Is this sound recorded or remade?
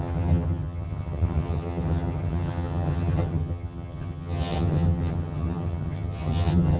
remade